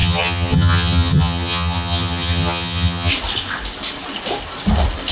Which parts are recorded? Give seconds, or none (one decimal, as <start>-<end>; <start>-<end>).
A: 3.1-5.1